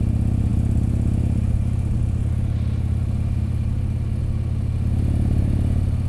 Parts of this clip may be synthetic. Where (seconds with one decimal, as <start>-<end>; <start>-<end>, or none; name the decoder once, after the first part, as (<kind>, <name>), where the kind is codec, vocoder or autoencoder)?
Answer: none

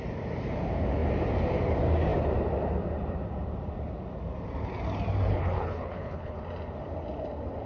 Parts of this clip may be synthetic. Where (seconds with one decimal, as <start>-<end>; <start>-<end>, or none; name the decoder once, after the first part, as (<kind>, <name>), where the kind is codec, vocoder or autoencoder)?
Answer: 5.3-6.4 (codec, HILCodec)

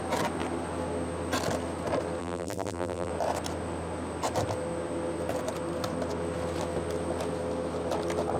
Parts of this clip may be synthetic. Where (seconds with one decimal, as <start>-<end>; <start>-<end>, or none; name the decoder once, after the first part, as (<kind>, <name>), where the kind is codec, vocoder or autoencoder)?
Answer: 2.2-3.1 (vocoder, BigVGAN v2)